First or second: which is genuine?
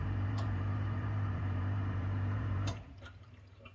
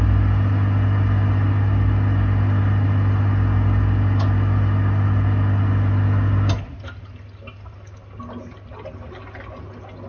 second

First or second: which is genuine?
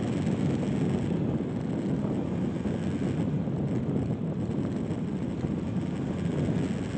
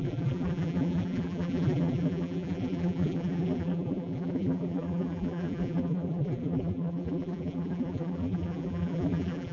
first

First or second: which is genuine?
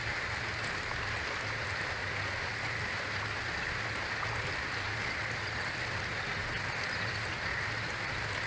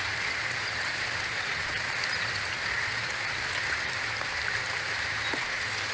first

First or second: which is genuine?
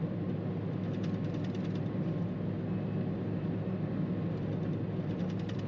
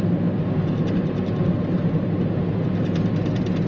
first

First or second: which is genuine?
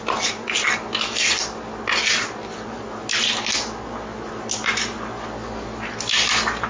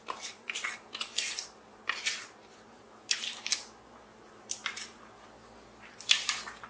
first